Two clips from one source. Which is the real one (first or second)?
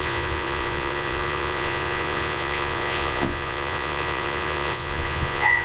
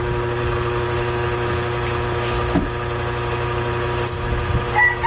second